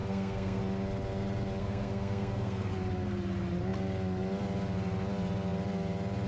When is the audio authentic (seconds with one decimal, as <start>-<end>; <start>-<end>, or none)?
0.6-1.6; 2.7-6.3